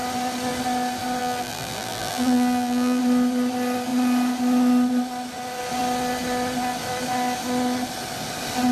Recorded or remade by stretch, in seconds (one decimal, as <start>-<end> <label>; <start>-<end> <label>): 0.0-1.2 recorded; 1.2-3.0 remade; 3.0-8.7 recorded